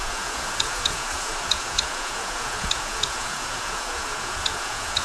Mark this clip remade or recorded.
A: remade